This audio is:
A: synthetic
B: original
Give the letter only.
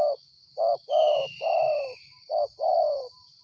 A